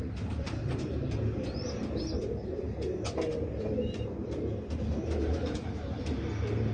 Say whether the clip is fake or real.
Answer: real